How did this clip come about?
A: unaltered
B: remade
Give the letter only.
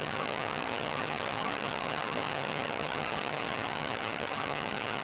B